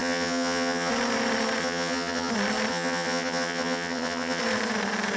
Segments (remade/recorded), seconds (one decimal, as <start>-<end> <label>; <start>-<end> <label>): 0.0-0.9 remade; 0.9-1.6 recorded; 1.6-2.3 remade; 2.3-2.7 recorded; 2.7-4.4 remade; 4.4-5.2 recorded